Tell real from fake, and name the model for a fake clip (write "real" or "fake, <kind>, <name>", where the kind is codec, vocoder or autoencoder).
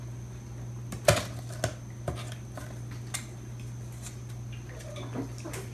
real